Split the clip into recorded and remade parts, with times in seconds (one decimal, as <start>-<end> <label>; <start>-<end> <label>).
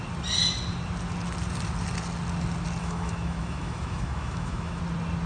0.0-2.8 recorded; 2.8-4.8 remade; 4.8-5.3 recorded